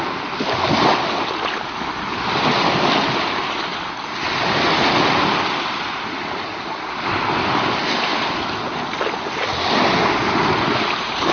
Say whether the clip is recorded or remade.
recorded